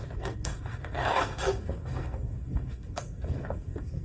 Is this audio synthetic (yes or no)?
yes